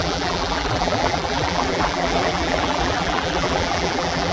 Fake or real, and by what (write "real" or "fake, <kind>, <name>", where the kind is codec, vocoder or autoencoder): fake, vocoder, BigVGAN v2